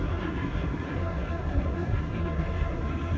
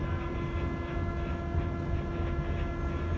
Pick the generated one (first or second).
first